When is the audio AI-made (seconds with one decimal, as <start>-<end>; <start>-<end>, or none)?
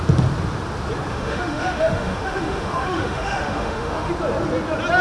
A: 1.1-4.1